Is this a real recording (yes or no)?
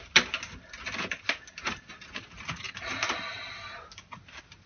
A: yes